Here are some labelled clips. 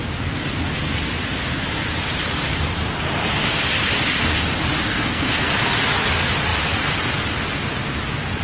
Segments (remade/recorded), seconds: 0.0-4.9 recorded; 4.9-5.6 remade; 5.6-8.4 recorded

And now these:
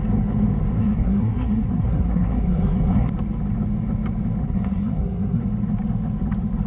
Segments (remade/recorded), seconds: 0.0-0.8 recorded; 0.8-3.1 remade; 3.1-4.4 recorded; 4.4-5.4 remade; 5.4-6.7 recorded

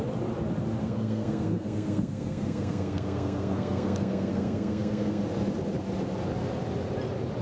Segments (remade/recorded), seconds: 0.0-0.8 recorded; 0.8-5.2 remade; 5.2-7.4 recorded

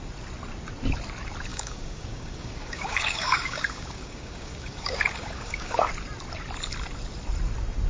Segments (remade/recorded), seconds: 0.0-1.5 recorded; 1.5-5.9 remade; 5.9-7.9 recorded

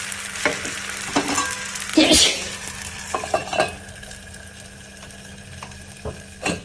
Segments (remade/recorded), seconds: 0.0-6.6 recorded